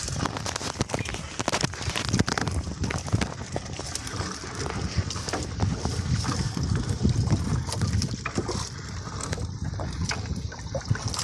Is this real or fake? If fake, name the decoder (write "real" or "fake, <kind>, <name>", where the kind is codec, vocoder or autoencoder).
real